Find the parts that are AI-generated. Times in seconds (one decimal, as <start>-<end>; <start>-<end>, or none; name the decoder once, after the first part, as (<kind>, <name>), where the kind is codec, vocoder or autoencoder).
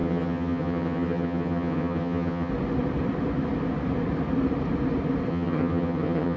0.0-2.5 (vocoder, HiFi-GAN); 5.3-6.4